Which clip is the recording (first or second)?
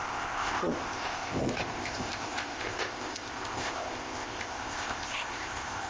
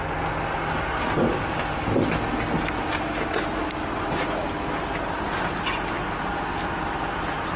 second